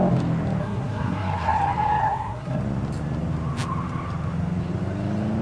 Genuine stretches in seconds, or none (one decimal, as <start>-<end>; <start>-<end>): 0.0-0.6; 1.6-2.0; 2.6-5.4